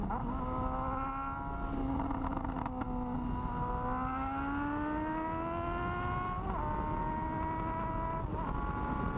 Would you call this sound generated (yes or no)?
no